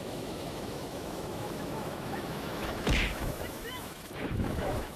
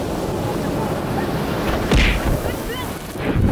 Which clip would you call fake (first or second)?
first